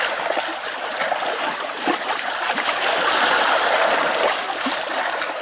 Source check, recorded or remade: recorded